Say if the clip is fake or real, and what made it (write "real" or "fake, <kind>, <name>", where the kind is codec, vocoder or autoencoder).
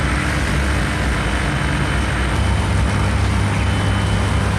real